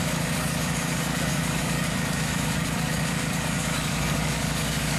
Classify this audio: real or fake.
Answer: fake